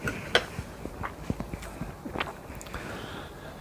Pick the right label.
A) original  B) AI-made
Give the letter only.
A